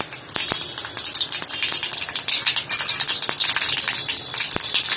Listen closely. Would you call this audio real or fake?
real